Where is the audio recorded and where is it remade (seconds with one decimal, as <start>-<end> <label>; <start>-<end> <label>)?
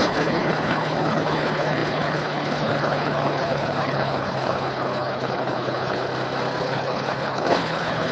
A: 0.0-6.1 remade; 6.1-6.6 recorded; 6.6-8.1 remade